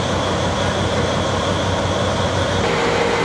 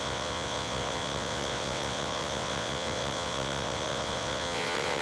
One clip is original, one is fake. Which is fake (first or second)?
second